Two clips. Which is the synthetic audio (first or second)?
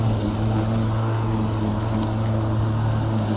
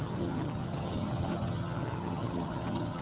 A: second